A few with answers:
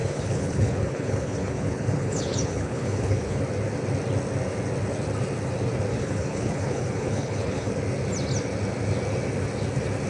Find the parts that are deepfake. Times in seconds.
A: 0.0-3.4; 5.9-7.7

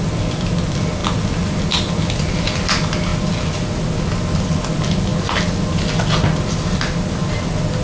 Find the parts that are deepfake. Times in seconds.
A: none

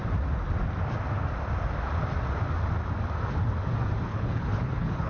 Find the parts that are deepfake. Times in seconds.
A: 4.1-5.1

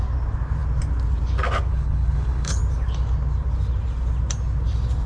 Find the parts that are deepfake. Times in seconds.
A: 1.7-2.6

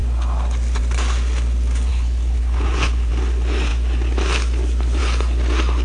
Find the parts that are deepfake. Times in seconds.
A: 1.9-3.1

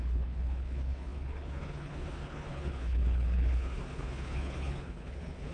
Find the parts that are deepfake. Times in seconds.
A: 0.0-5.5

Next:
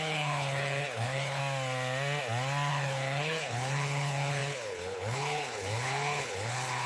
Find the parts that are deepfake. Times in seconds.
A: 0.0-1.4; 2.7-6.9

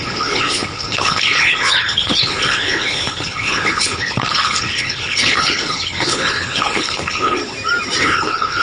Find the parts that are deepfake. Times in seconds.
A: 0.0-7.4; 8.0-8.6